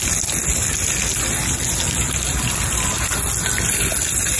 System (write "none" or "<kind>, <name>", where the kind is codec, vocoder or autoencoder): none